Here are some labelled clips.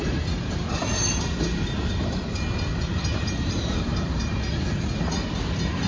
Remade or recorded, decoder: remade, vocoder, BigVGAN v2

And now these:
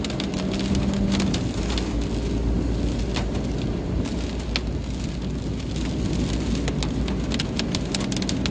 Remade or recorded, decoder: recorded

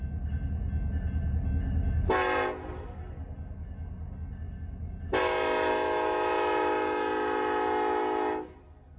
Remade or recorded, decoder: recorded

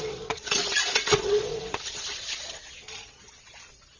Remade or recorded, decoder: remade, vocoder, Vocos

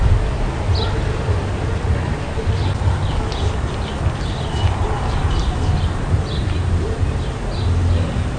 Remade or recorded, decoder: recorded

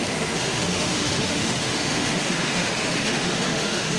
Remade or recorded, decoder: remade, autoencoder, DAC-VAE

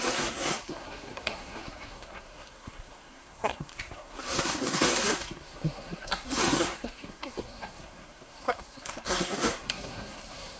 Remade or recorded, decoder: remade, codec, SNAC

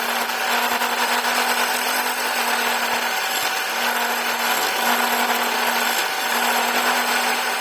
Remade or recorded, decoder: recorded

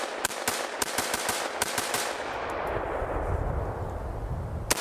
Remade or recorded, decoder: recorded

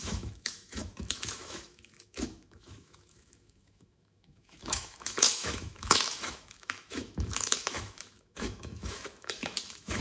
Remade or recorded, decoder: remade, autoencoder, DAC-VAE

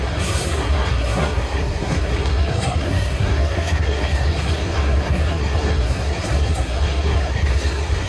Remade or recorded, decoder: remade, codec, SNAC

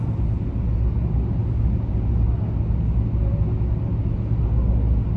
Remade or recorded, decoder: recorded